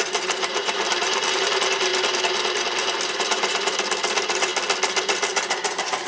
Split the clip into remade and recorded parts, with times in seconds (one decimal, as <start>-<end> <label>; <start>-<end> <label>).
0.0-1.9 remade; 1.9-3.1 recorded; 3.1-4.5 remade; 4.5-5.0 recorded; 5.0-6.1 remade